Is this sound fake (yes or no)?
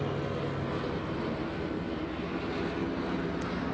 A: no